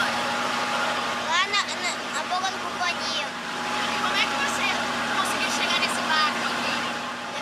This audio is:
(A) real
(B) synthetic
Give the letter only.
B